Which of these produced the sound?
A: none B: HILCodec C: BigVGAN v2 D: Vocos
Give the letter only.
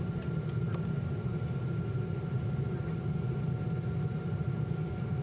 A